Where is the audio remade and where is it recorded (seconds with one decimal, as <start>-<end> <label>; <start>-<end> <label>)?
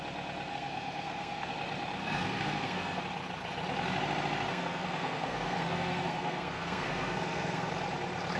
0.0-0.5 recorded; 0.5-1.5 remade; 1.5-2.0 recorded; 2.0-3.0 remade; 3.0-4.5 recorded; 4.5-7.7 remade; 7.7-8.4 recorded